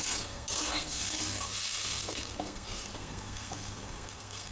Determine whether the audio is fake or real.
fake